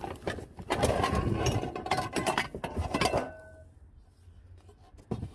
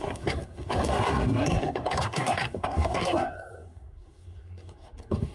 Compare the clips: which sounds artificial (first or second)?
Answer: second